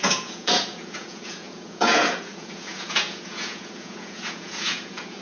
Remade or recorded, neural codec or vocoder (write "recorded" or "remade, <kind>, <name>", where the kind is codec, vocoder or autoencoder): remade, vocoder, Vocos